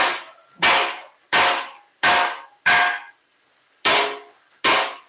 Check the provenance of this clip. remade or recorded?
recorded